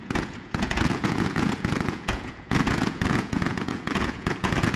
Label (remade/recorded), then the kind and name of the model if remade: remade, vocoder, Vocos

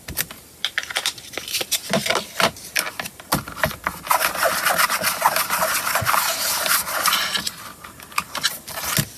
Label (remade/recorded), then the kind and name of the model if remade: recorded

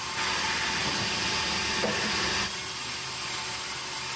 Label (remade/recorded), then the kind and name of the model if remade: recorded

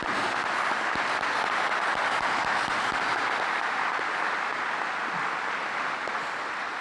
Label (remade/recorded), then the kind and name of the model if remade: recorded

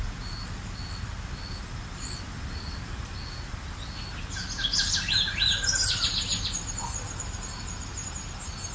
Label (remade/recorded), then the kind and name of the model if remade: recorded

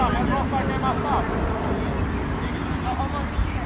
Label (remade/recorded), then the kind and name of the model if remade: recorded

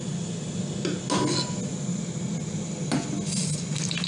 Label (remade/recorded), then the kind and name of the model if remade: recorded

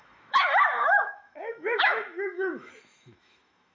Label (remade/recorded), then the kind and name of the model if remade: remade, autoencoder, DAC-VAE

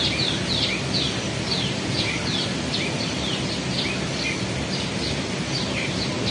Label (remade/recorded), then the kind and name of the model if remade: recorded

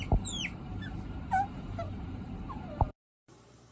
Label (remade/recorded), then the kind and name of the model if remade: remade, vocoder, BigVGAN v2